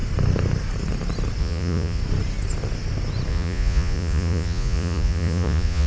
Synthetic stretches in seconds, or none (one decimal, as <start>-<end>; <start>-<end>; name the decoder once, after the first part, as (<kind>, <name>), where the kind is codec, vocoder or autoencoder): 1.4-2.0 (vocoder, Vocos); 3.3-5.9